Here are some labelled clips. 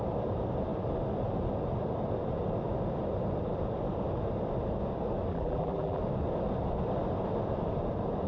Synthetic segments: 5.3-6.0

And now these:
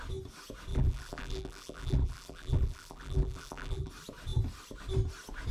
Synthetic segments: 0.7-3.9

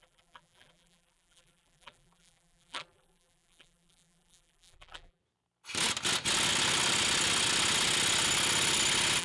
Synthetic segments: 0.0-5.2

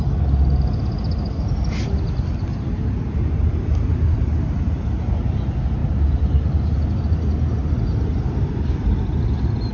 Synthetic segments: 5.8-7.0

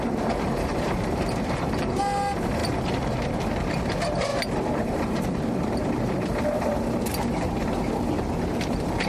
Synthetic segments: 0.7-1.9; 4.3-9.1

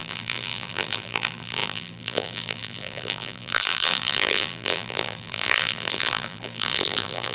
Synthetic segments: 0.0-7.3

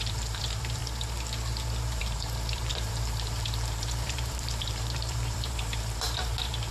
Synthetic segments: 0.0-0.8; 2.0-6.7

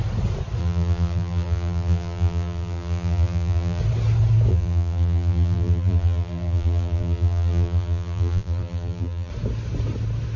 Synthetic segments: 0.6-3.8; 4.5-9.3